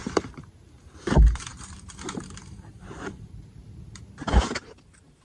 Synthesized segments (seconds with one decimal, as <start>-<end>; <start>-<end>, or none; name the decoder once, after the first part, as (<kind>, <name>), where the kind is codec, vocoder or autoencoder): 0.0-5.2 (vocoder, BigVGAN v2)